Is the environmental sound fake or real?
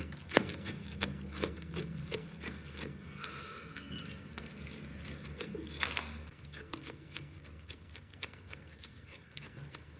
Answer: fake